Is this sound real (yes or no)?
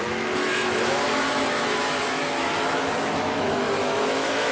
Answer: no